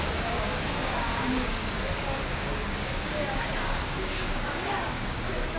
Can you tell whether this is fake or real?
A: fake